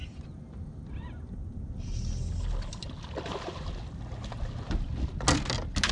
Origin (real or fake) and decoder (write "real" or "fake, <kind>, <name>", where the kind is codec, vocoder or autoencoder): real